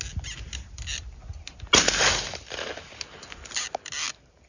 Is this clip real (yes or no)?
yes